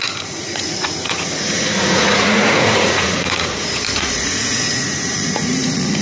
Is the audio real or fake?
fake